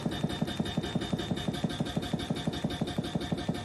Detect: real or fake real